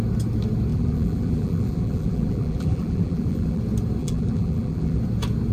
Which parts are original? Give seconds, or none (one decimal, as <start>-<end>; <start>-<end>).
0.0-0.7; 3.6-4.0; 5.0-5.5